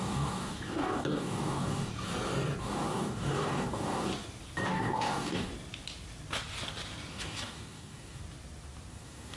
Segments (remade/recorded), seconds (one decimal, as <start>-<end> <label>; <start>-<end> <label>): 0.0-1.9 remade; 1.9-2.6 recorded; 2.6-4.1 remade; 4.1-4.7 recorded; 4.7-5.5 remade; 5.5-7.1 recorded; 7.1-8.2 remade; 8.2-8.9 recorded; 8.9-9.4 remade